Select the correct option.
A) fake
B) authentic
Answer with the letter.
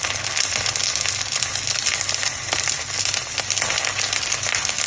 B